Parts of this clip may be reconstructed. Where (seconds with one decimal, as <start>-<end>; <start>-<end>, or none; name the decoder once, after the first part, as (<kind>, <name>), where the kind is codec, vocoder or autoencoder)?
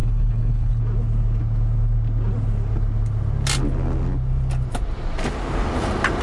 0.0-0.8 (codec, HILCodec)